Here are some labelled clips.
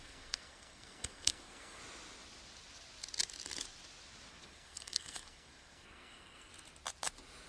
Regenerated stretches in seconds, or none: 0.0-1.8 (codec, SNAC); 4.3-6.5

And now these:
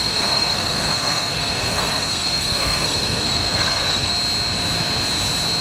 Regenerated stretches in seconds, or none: 0.0-4.1 (codec, SNAC)

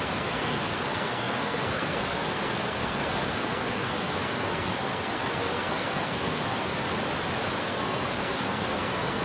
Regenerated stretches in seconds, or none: 0.0-6.8 (codec, SNAC); 7.6-9.2

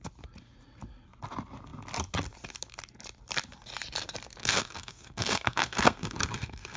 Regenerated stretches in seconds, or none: 4.4-6.8 (codec, SNAC)

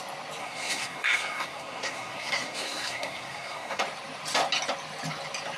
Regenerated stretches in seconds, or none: 0.4-3.8 (codec, SNAC)

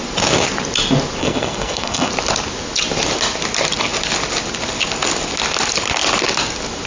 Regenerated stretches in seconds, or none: 1.2-2.1 (codec, SNAC)

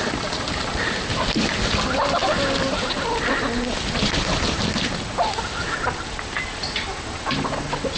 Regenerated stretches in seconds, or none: none